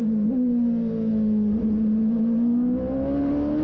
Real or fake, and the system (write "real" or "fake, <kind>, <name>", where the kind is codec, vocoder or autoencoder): real